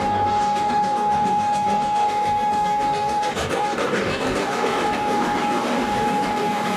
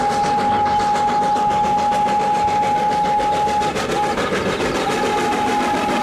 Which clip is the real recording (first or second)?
second